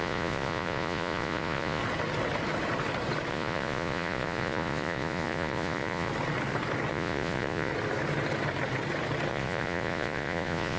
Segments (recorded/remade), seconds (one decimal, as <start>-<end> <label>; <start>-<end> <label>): 0.0-1.8 remade; 1.8-3.3 recorded; 3.3-6.1 remade; 6.1-6.9 recorded; 6.9-7.7 remade; 7.7-9.3 recorded; 9.3-10.8 remade

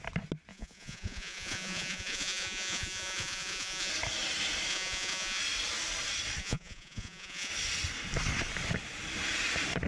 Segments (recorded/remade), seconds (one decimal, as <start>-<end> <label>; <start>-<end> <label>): 0.0-0.5 recorded; 0.5-3.9 remade; 3.9-4.7 recorded; 4.7-5.4 remade; 5.4-6.4 recorded; 6.4-7.5 remade; 7.5-9.9 recorded

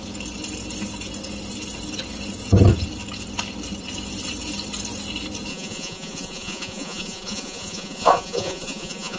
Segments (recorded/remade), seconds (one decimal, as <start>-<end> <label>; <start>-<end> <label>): 0.0-5.5 recorded; 5.5-9.2 remade

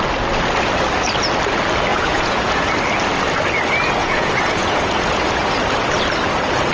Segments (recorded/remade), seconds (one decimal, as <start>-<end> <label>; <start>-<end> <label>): 0.0-1.9 recorded; 1.9-2.7 remade; 2.7-4.0 recorded; 4.0-5.2 remade; 5.2-6.7 recorded

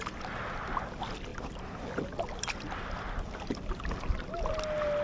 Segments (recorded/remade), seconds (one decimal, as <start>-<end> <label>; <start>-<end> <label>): 0.0-5.0 recorded

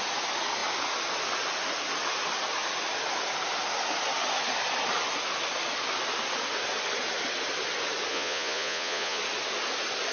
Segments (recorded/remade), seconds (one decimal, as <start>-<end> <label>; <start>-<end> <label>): 0.0-8.1 recorded; 8.1-9.2 remade; 9.2-10.1 recorded